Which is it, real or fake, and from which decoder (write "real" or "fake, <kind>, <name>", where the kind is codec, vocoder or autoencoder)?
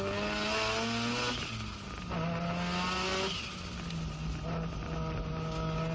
real